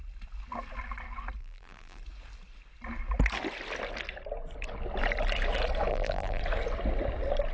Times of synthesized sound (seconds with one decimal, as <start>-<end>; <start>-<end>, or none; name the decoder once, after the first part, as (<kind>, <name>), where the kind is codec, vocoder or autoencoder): 1.4-2.0 (vocoder, BigVGAN v2); 5.9-6.4